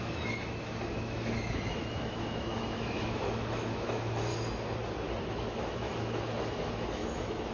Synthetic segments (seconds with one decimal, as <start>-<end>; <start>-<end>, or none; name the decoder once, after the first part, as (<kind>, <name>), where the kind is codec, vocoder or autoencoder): 0.0-4.3 (autoencoder, DAC-VAE); 5.3-7.5